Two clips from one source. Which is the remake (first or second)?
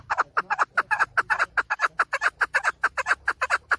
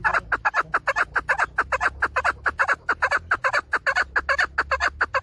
first